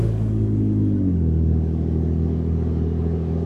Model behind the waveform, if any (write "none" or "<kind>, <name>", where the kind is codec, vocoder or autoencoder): codec, DAC